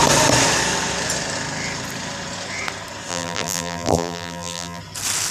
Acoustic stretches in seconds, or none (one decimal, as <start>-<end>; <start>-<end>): 0.0-3.1; 4.8-5.3